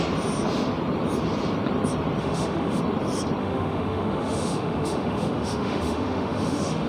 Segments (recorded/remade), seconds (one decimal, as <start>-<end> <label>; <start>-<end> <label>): 0.0-2.2 recorded; 2.2-2.8 remade; 2.8-3.4 recorded; 3.4-6.9 remade